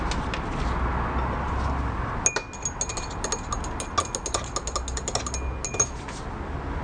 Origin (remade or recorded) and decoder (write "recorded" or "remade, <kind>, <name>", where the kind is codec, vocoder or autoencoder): recorded